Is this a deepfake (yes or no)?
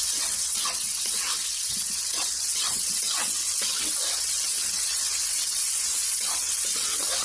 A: yes